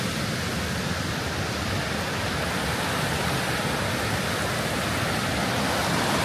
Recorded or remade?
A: recorded